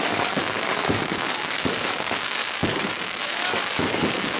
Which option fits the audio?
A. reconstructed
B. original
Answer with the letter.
A